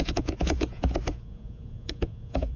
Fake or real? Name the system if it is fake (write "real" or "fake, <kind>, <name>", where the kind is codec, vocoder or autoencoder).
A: fake, vocoder, Vocos